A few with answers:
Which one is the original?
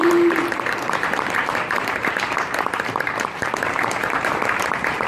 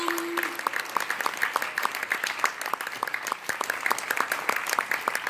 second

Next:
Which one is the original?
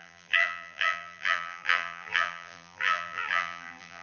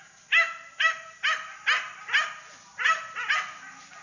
second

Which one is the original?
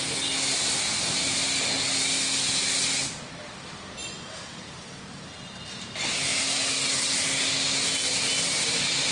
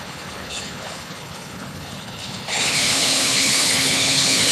first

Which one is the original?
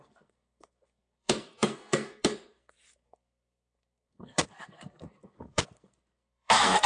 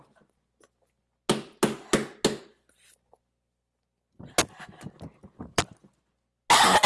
second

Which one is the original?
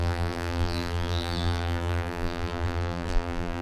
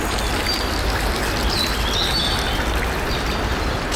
second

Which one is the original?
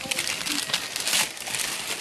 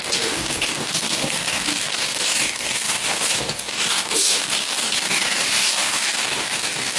first